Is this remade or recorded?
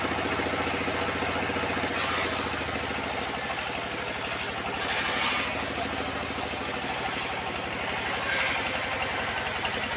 recorded